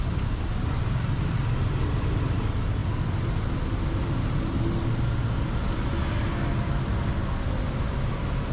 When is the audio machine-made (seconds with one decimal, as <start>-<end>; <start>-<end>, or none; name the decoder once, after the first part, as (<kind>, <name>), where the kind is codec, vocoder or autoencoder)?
none